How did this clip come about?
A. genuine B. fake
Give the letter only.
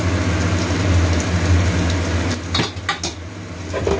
A